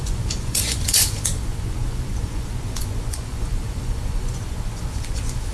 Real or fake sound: fake